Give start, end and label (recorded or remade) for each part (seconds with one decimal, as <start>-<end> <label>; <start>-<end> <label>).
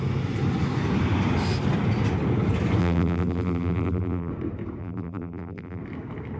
0.0-2.8 recorded; 2.8-4.3 remade; 4.3-4.8 recorded; 4.8-5.8 remade; 5.8-6.4 recorded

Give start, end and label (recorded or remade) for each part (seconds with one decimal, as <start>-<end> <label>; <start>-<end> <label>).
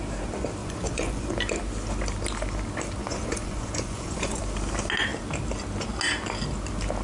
0.0-0.6 recorded; 0.6-1.3 remade; 1.3-3.0 recorded; 3.0-4.4 remade; 4.4-7.0 recorded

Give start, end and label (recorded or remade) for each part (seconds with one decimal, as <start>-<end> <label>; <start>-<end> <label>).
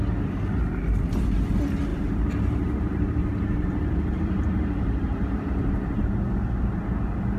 0.0-1.9 recorded; 1.9-6.1 remade; 6.1-7.4 recorded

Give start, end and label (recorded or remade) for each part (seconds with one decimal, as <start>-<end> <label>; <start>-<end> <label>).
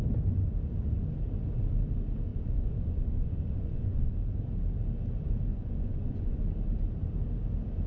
0.0-2.3 recorded; 2.3-4.1 remade; 4.1-5.5 recorded; 5.5-6.4 remade; 6.4-7.9 recorded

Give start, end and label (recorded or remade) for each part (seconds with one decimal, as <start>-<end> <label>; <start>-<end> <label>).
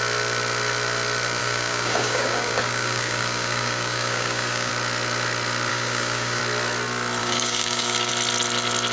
0.0-1.4 recorded; 1.4-4.7 remade; 4.7-5.7 recorded; 5.7-6.4 remade; 6.4-7.2 recorded; 7.2-8.1 remade; 8.1-8.9 recorded